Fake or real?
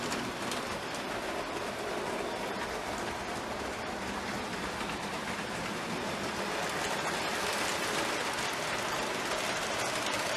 real